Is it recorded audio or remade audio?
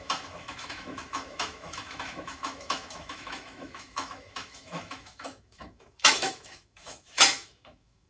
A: remade